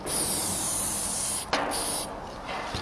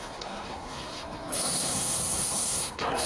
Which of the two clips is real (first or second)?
first